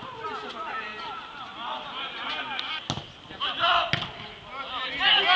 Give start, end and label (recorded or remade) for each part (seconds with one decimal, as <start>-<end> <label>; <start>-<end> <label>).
0.0-5.4 recorded